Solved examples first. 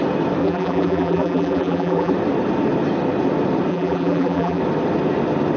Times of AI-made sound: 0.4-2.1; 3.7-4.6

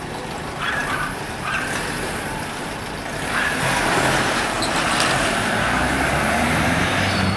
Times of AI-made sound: 0.0-7.4

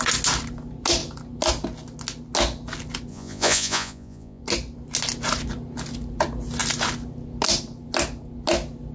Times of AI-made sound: 3.1-4.4

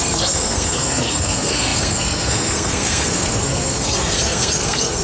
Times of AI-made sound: 0.0-5.0

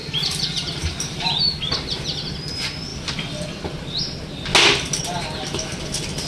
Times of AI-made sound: 0.0-1.6

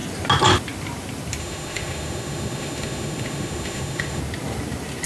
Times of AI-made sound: 1.4-4.2

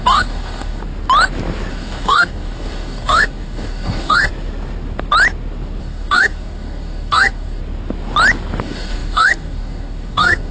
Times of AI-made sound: 0.0-0.8; 1.7-4.3; 5.8-7.6; 8.6-10.5